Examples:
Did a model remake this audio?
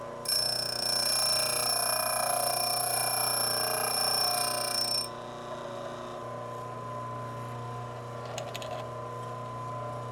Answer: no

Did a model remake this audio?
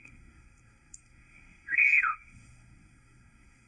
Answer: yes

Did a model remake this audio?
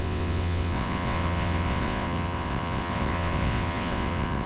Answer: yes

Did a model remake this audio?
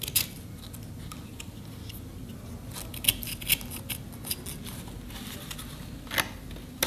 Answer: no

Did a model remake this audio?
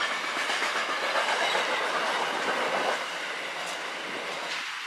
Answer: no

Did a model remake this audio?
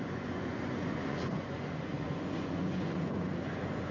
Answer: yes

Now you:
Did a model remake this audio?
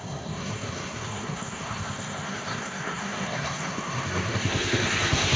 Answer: yes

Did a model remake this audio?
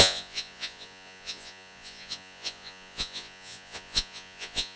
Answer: yes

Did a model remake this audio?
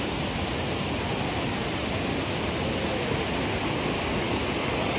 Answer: no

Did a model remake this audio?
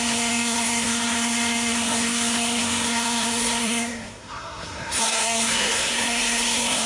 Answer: yes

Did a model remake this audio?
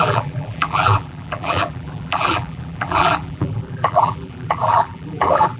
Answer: yes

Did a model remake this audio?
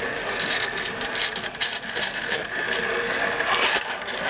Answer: no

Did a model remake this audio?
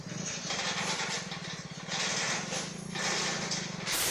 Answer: no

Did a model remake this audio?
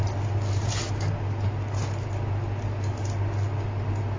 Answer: no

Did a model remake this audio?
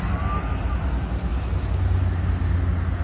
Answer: no